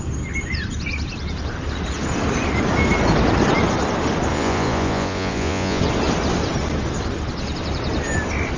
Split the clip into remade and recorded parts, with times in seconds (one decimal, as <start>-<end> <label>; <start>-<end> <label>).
0.0-4.3 recorded; 4.3-5.8 remade; 5.8-8.6 recorded